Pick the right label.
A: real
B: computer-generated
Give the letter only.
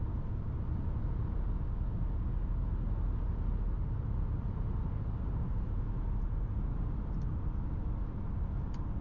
A